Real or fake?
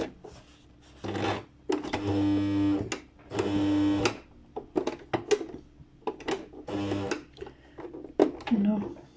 real